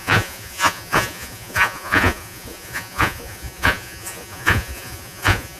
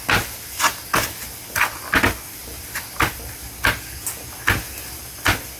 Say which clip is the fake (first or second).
first